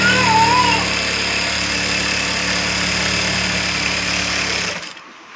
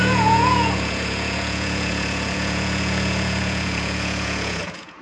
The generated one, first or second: second